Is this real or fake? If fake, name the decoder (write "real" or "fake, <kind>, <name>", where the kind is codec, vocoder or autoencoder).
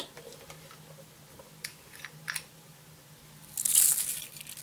real